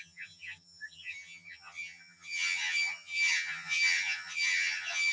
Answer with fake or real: fake